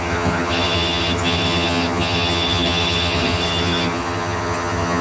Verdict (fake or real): fake